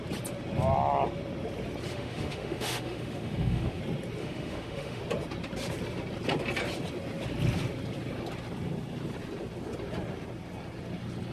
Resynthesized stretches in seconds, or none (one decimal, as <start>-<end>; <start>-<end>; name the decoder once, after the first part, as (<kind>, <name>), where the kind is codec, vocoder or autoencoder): 1.9-3.8 (autoencoder, DAC-VAE); 4.2-5.0